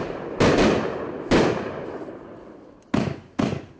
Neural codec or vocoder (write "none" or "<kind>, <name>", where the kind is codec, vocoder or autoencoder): none